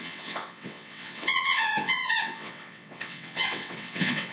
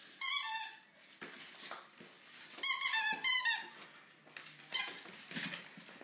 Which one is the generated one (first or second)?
first